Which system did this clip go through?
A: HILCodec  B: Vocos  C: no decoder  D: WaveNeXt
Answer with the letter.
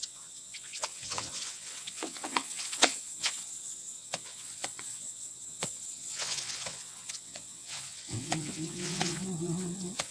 D